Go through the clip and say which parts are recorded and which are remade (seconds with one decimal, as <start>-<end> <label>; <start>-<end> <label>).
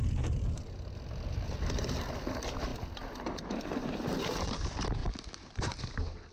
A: 0.0-5.0 recorded; 5.0-5.6 remade; 5.6-6.3 recorded